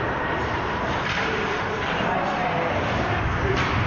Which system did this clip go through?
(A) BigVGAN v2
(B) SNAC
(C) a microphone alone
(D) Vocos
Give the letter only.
C